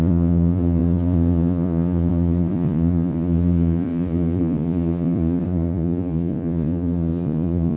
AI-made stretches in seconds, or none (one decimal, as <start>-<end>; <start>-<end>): 0.0-7.8